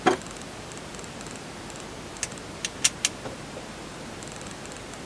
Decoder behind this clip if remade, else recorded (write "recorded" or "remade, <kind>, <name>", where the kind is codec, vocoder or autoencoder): recorded